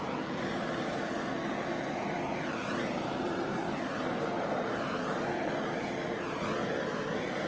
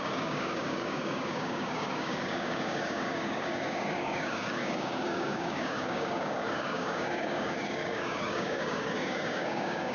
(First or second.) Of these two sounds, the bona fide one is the first